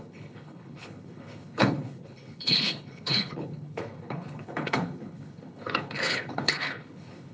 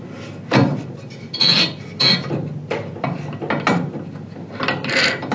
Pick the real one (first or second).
second